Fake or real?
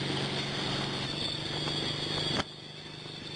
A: real